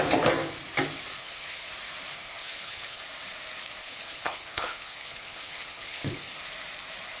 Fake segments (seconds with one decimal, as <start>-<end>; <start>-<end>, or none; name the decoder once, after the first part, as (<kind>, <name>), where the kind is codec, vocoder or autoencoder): 1.2-1.7 (codec, HILCodec); 2.1-3.0; 3.8-6.4